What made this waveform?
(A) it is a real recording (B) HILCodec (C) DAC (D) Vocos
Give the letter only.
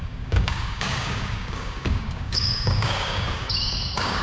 C